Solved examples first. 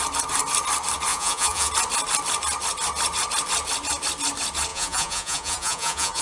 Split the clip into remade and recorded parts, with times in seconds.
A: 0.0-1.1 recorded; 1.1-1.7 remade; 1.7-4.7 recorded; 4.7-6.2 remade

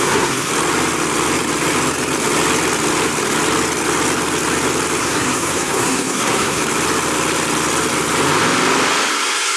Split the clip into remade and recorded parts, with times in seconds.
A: 0.0-0.5 remade; 0.5-5.0 recorded; 5.0-6.6 remade; 6.6-9.1 recorded; 9.1-9.6 remade